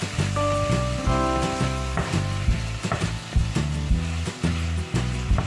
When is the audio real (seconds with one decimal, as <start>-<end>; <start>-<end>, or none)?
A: 0.0-5.5